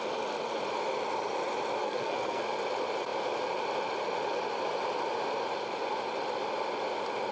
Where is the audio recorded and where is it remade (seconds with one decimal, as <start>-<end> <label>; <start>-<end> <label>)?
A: 0.0-1.8 recorded; 1.8-2.4 remade; 2.4-7.3 recorded